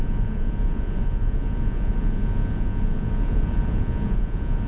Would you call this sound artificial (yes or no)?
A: yes